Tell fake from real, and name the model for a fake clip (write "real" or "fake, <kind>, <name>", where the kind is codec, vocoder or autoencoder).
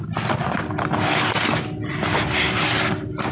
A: real